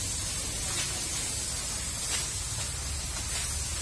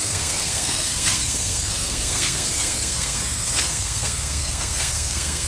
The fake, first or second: second